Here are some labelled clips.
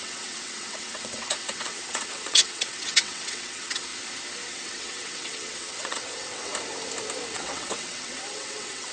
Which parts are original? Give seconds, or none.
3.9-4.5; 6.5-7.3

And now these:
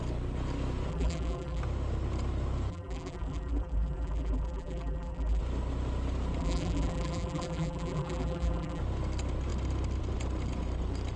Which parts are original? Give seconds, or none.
0.0-0.9; 1.6-2.7; 5.4-6.4; 8.8-11.2

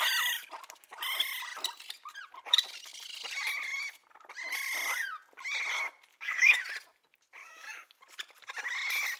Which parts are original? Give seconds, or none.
0.0-6.1; 6.6-7.4; 8.0-9.2